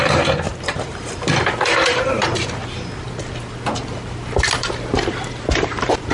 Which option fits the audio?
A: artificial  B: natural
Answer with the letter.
A